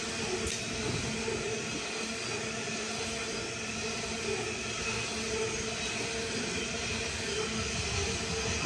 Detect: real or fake real